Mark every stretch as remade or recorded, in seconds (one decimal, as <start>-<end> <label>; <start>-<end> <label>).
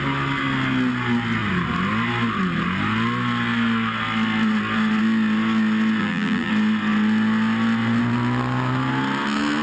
0.0-6.0 recorded; 6.0-6.5 remade; 6.5-9.6 recorded